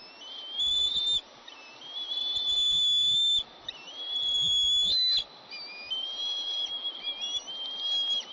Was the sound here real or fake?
real